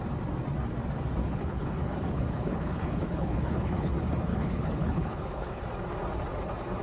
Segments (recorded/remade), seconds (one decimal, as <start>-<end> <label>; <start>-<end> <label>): 0.0-1.2 recorded; 1.2-3.9 remade; 3.9-4.3 recorded; 4.3-5.6 remade; 5.6-6.8 recorded

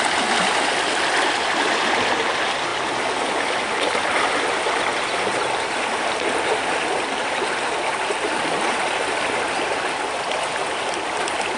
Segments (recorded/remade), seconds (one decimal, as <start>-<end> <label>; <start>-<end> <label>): 0.0-11.6 recorded

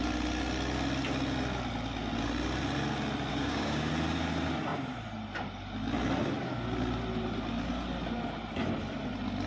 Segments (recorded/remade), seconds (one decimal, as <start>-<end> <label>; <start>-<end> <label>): 0.0-3.3 recorded; 3.3-3.9 remade; 3.9-9.5 recorded

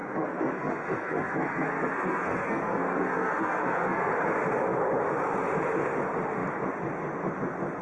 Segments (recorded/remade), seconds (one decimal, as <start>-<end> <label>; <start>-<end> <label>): 0.0-4.1 remade; 4.1-7.8 recorded

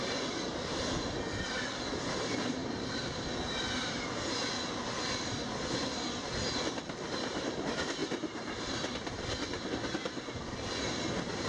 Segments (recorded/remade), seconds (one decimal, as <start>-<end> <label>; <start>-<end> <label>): 0.0-2.6 recorded; 2.6-4.1 remade; 4.1-8.0 recorded; 8.0-9.3 remade; 9.3-11.5 recorded

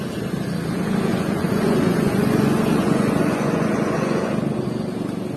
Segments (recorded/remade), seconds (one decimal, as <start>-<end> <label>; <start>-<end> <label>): 0.0-1.1 recorded; 1.1-4.3 remade; 4.3-5.4 recorded

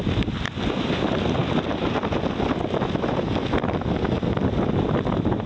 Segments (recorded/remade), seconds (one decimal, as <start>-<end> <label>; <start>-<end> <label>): 0.0-5.5 recorded